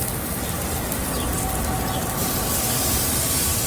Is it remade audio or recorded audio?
recorded